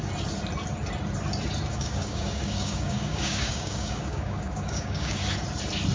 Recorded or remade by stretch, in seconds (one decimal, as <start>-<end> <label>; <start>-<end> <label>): 0.0-1.7 recorded; 1.7-5.2 remade; 5.2-5.9 recorded